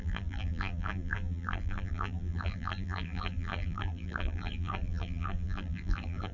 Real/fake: fake